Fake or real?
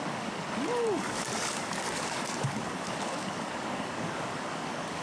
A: fake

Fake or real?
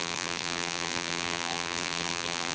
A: fake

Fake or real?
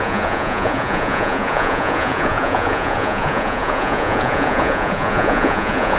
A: fake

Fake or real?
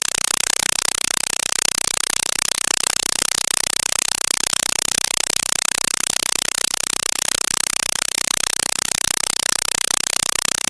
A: fake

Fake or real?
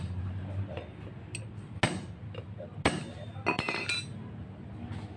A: real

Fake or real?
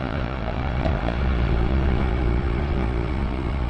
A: fake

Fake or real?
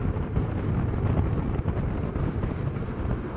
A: fake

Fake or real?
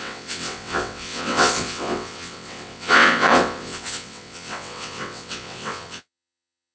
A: fake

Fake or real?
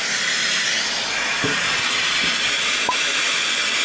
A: real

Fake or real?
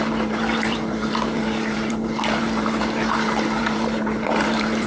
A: fake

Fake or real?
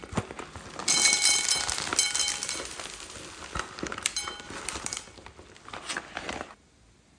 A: real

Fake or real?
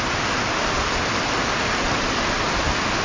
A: real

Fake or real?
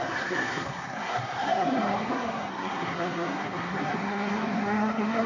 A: fake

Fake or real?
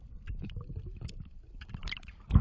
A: real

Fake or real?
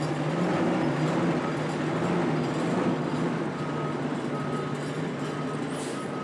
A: real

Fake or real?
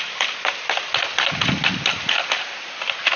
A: real